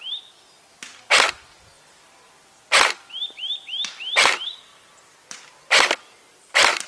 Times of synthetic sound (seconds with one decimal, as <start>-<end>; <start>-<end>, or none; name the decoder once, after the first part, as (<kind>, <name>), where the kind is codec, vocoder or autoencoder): none